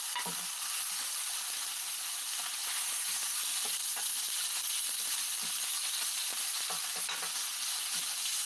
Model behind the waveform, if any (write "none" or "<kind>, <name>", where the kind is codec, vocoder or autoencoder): none